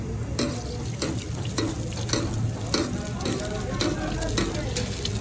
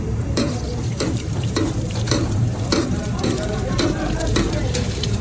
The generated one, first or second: second